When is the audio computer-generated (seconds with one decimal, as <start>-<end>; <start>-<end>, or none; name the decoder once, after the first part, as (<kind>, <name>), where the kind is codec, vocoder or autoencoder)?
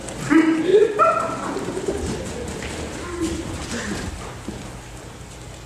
none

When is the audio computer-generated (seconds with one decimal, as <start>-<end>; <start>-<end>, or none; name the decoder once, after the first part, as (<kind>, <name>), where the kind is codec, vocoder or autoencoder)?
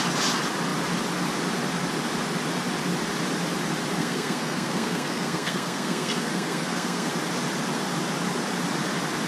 4.0-7.1 (codec, SNAC)